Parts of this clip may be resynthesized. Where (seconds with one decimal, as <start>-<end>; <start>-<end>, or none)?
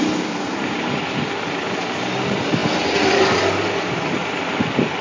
none